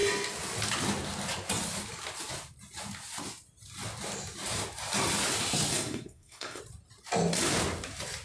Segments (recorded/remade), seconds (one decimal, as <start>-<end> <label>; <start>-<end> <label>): 0.0-5.7 recorded; 5.7-6.6 remade; 6.6-8.2 recorded